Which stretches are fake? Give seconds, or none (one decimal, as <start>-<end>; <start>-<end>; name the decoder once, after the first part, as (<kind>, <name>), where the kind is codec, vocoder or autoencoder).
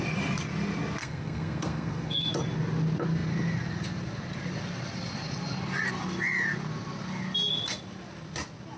1.0-2.3 (codec, SNAC)